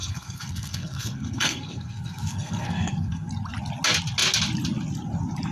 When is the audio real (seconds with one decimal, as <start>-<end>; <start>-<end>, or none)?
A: 3.3-5.5